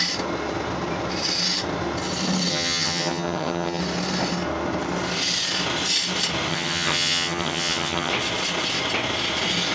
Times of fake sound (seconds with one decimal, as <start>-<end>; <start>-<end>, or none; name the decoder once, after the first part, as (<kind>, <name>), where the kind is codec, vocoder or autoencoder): 2.5-3.8 (vocoder, HiFi-GAN); 6.5-8.1